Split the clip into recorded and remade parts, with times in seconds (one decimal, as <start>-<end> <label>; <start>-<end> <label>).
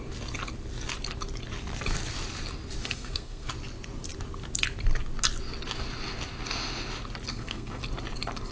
0.0-2.8 recorded; 2.8-3.5 remade; 3.5-7.3 recorded; 7.3-7.8 remade; 7.8-8.5 recorded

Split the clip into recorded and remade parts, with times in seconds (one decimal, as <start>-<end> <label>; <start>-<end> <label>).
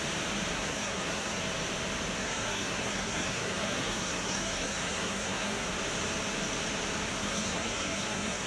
0.0-0.5 recorded; 0.5-1.4 remade; 1.4-2.2 recorded; 2.2-5.7 remade; 5.7-7.2 recorded; 7.2-8.5 remade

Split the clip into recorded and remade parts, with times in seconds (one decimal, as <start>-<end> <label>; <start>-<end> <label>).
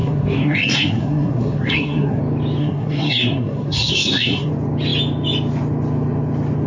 0.0-2.2 remade; 2.2-2.6 recorded; 2.6-4.5 remade; 4.5-6.7 recorded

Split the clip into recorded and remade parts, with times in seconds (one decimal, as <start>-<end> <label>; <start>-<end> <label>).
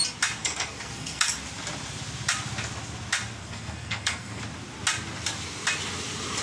0.0-0.4 recorded; 0.4-1.3 remade; 1.3-3.4 recorded; 3.4-4.4 remade; 4.4-6.4 recorded